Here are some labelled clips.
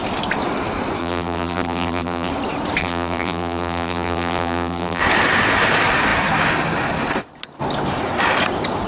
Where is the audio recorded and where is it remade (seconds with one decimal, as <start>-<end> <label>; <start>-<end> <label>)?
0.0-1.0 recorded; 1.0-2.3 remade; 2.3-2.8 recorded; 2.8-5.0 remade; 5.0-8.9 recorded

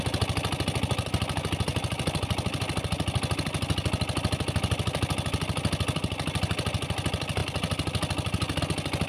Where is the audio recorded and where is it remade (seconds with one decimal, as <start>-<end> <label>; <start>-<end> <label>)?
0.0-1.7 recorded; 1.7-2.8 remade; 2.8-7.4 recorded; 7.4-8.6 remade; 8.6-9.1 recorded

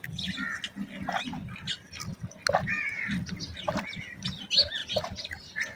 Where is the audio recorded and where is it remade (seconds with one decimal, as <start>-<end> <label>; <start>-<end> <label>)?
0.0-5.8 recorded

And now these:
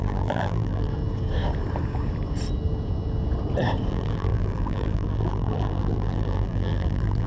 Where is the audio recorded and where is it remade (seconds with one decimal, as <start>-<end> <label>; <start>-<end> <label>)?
0.0-0.9 remade; 0.9-3.9 recorded; 3.9-7.3 remade

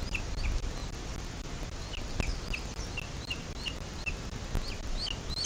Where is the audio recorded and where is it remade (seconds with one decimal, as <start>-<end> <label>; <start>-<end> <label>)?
0.0-5.5 recorded

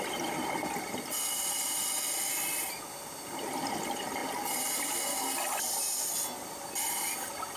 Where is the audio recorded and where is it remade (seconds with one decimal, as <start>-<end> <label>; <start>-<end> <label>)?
0.0-7.6 recorded